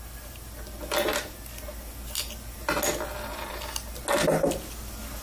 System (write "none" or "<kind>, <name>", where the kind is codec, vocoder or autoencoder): none